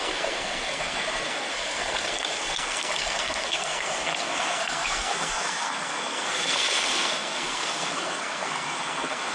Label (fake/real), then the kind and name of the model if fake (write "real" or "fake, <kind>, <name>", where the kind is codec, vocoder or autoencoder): fake, codec, SNAC